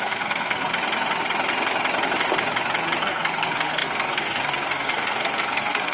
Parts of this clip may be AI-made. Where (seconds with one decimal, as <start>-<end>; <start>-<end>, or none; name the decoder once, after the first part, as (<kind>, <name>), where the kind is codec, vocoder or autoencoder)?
0.0-0.7 (codec, SNAC); 3.0-5.9